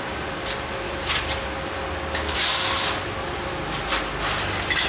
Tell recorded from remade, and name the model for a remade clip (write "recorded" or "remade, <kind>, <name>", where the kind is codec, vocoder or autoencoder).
recorded